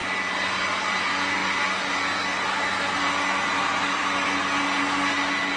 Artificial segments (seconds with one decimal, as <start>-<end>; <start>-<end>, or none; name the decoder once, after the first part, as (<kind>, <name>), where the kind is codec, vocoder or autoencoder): none